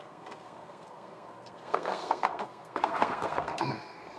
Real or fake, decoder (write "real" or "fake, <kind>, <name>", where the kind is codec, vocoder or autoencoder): fake, codec, SNAC